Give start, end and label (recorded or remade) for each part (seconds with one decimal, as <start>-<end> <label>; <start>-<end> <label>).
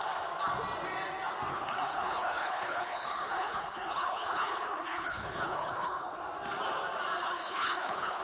0.0-1.5 recorded; 1.5-6.2 remade; 6.2-7.2 recorded; 7.2-8.2 remade